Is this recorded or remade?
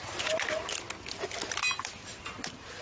recorded